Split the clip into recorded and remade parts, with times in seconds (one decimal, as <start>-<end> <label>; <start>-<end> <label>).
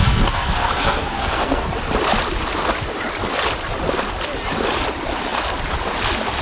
0.0-1.7 remade; 1.7-6.4 recorded